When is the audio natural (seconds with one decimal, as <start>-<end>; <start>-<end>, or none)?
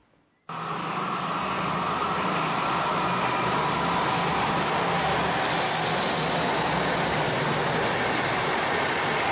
0.0-9.3